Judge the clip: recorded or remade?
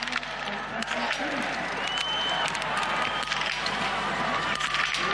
remade